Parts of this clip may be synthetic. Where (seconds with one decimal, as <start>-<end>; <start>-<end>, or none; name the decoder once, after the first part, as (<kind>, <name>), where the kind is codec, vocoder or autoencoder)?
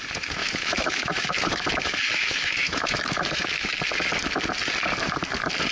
0.4-3.8 (autoencoder, DAC-VAE)